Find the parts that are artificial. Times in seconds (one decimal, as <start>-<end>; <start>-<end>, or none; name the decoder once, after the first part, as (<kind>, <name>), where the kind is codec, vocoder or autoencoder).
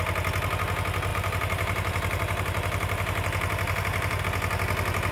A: 1.1-4.2 (vocoder, BigVGAN v2)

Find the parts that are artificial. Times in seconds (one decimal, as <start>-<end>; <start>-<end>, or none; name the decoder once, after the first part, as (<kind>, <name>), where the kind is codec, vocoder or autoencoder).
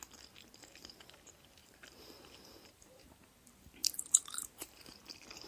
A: 1.6-4.9 (vocoder, BigVGAN v2)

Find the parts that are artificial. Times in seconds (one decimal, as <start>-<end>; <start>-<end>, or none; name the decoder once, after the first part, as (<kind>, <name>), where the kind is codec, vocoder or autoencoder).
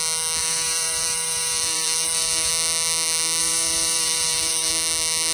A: 0.4-2.5 (vocoder, BigVGAN v2); 3.4-4.7